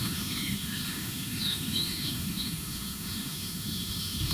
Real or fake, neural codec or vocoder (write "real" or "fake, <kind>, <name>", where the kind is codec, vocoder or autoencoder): fake, autoencoder, DAC-VAE